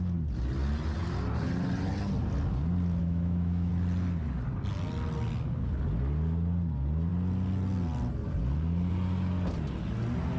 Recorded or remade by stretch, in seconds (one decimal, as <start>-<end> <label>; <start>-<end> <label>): 0.0-3.0 recorded; 3.0-3.7 remade; 3.7-10.4 recorded